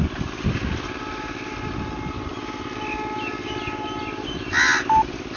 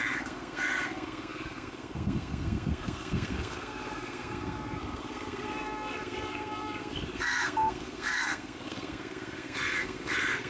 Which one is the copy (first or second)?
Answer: second